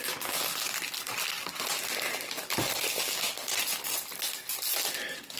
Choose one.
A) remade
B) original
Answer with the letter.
B